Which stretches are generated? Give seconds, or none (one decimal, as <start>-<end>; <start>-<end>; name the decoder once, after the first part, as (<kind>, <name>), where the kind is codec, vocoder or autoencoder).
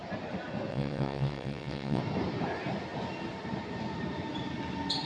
0.7-2.0 (vocoder, WaveNeXt)